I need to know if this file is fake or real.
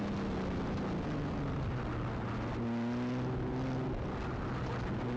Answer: real